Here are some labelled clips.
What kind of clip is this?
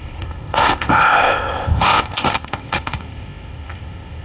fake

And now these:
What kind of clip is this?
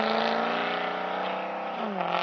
real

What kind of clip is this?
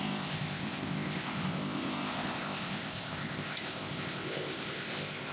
fake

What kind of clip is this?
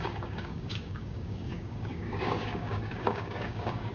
fake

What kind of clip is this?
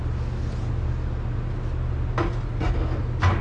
real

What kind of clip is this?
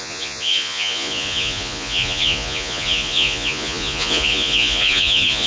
fake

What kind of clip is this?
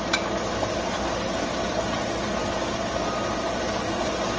real